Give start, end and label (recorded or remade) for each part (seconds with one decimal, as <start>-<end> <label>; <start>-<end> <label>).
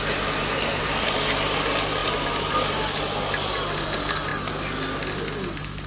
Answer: 0.0-5.9 recorded